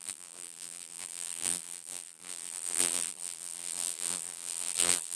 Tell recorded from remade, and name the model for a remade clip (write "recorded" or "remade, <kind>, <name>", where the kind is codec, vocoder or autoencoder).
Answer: remade, vocoder, BigVGAN v2